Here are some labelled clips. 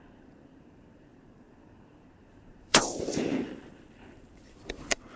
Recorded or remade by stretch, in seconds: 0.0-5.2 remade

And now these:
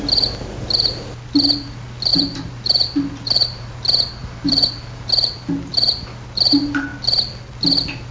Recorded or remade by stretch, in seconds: 0.0-2.1 recorded; 2.1-3.7 remade; 3.7-4.2 recorded; 4.2-5.1 remade; 5.1-8.1 recorded

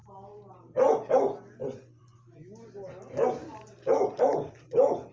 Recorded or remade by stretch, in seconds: 0.0-2.0 remade; 2.0-3.4 recorded; 3.4-5.1 remade

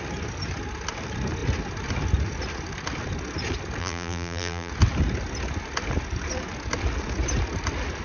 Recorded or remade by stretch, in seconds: 0.0-3.8 recorded; 3.8-4.7 remade; 4.7-8.0 recorded

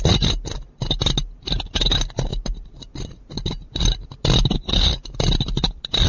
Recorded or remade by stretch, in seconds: 0.0-2.3 recorded; 2.3-6.1 remade

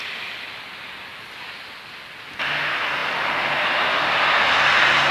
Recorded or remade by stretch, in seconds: 0.0-5.1 recorded

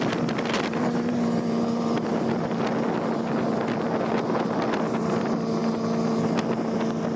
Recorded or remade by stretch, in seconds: 0.0-2.1 remade; 2.1-3.4 recorded; 3.4-5.6 remade; 5.6-7.2 recorded